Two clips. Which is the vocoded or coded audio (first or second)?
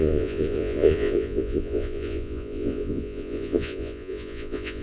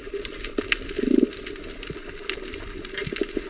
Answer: first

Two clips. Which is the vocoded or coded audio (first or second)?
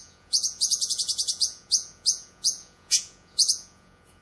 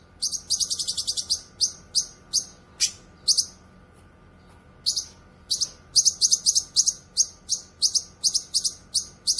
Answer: first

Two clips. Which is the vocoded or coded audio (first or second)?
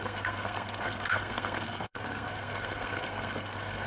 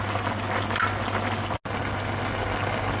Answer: first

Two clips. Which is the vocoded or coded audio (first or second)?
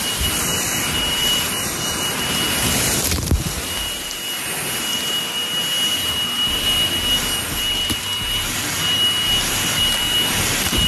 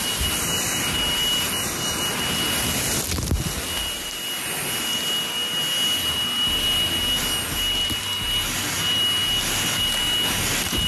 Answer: first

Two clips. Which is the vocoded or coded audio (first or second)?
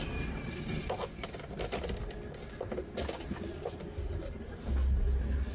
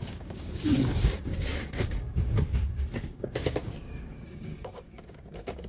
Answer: second